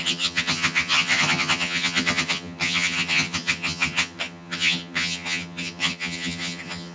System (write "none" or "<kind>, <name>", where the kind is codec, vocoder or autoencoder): vocoder, HiFi-GAN